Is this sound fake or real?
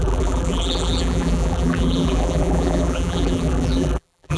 fake